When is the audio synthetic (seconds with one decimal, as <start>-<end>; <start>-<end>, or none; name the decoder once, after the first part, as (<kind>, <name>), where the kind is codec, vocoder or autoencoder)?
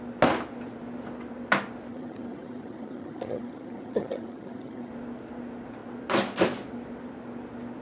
1.9-4.9 (vocoder, HiFi-GAN)